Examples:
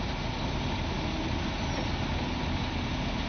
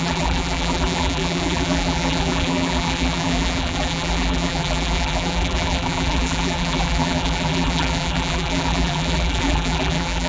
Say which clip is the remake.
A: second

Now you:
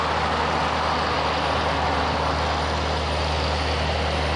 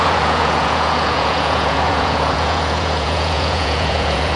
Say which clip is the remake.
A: second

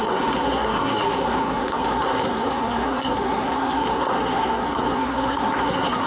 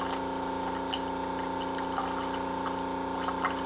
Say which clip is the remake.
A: first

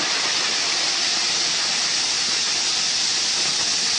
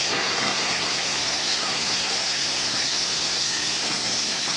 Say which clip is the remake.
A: second